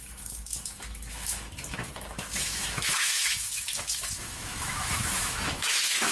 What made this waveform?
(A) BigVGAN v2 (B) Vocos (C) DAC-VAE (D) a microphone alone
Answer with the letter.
C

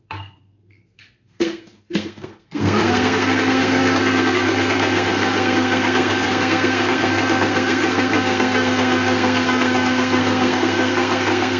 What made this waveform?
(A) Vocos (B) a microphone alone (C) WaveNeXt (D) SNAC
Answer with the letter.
D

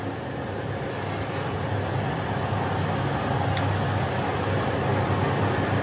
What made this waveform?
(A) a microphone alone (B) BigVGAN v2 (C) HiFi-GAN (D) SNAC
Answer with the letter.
A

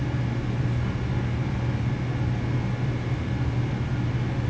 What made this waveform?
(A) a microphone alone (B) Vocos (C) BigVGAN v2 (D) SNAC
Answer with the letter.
A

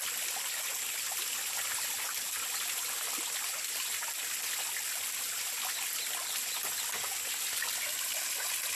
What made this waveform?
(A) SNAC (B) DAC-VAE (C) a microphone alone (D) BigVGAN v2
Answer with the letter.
C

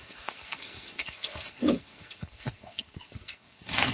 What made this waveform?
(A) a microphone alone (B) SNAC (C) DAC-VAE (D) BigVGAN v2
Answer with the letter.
B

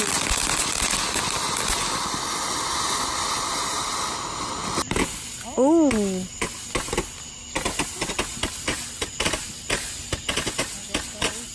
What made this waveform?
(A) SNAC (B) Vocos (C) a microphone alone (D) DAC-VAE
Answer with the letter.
C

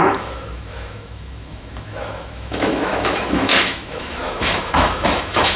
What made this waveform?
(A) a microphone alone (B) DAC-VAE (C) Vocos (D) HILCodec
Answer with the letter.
B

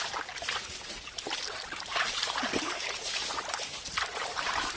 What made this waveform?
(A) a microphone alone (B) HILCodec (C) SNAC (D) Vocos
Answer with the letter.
A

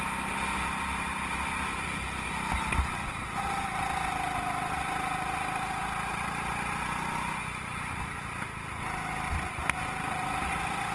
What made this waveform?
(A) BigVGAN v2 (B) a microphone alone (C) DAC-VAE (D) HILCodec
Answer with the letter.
B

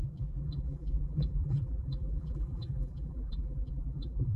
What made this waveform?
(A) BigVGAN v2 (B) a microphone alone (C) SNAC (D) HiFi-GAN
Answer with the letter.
A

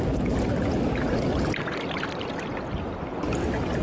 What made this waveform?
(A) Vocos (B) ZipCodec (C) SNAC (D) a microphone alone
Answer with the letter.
D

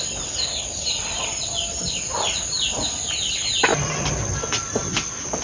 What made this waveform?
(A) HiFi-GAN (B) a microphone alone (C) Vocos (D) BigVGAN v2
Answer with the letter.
B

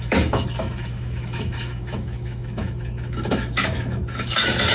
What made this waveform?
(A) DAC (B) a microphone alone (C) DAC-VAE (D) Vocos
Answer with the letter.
C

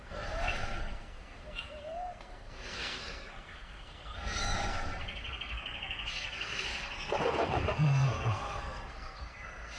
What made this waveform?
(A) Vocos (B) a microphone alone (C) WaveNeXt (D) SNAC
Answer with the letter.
D